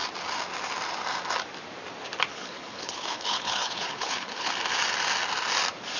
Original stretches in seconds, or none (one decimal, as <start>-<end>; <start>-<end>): 0.0-2.3; 4.5-6.0